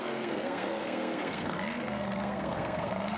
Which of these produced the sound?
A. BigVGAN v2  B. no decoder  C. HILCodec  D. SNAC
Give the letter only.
D